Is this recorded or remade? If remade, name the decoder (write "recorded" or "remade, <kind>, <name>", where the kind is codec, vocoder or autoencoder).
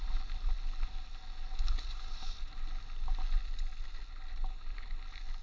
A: recorded